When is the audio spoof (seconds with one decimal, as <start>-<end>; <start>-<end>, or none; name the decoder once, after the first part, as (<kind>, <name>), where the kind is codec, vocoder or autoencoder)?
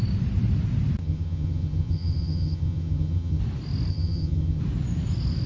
1.0-3.4 (vocoder, HiFi-GAN); 3.9-4.6